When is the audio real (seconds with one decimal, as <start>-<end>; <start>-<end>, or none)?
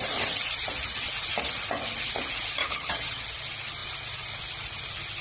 0.0-2.6; 3.2-5.2